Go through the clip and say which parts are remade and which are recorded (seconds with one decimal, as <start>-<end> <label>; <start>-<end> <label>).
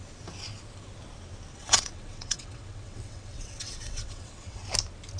0.0-1.5 recorded; 1.5-4.6 remade; 4.6-5.2 recorded